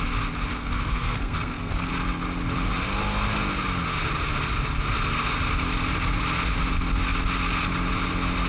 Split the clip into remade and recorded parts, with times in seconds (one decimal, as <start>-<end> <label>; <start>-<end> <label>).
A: 0.0-0.5 recorded; 0.5-1.9 remade; 1.9-8.5 recorded